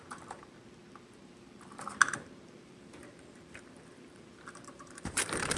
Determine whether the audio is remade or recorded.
remade